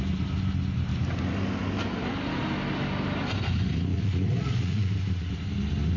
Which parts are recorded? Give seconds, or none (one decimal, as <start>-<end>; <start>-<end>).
0.0-3.9; 4.9-6.0